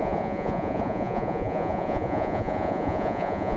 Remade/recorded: remade